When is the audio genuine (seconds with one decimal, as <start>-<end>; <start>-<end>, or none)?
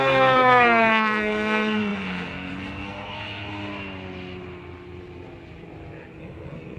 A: 3.7-6.2